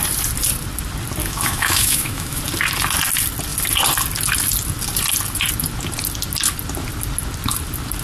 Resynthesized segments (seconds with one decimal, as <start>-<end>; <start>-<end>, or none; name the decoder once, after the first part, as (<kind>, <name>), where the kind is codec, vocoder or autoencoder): 1.2-2.4 (autoencoder, DAC-VAE)